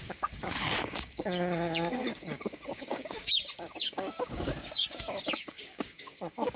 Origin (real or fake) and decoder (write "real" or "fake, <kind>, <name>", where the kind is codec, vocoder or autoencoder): fake, codec, DAC